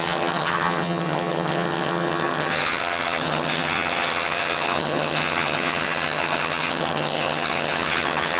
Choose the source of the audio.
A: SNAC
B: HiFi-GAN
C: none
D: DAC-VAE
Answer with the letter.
B